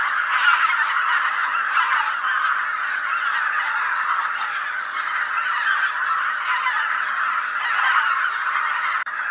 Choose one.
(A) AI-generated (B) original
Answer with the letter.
B